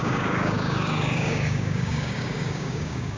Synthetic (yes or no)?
yes